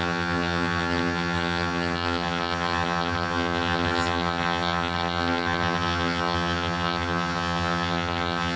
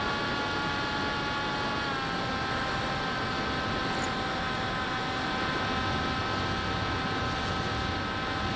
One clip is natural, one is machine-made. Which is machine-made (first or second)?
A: first